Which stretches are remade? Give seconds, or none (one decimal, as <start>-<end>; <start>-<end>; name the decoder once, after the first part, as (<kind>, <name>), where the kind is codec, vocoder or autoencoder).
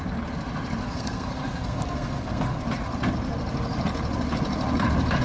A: 0.8-2.6 (codec, SNAC)